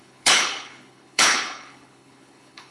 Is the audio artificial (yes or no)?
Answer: yes